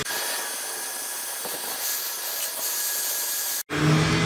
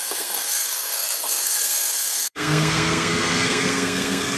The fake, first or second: second